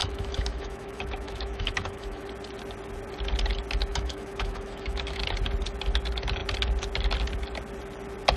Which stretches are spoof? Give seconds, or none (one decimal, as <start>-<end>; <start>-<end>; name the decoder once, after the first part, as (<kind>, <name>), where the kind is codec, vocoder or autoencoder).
0.0-2.3 (autoencoder, DAC-VAE); 3.9-5.2